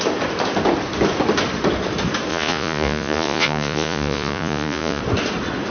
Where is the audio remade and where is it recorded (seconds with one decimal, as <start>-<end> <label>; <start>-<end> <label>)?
0.0-2.3 recorded; 2.3-5.0 remade; 5.0-5.7 recorded